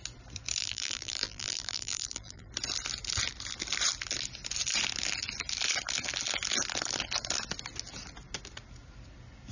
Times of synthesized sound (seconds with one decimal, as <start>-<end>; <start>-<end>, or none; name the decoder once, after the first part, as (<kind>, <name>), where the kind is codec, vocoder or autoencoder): 0.6-2.5 (vocoder, BigVGAN v2)